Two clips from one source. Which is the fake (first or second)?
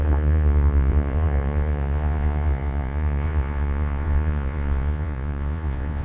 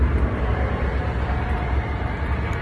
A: first